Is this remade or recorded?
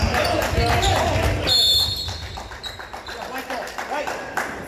recorded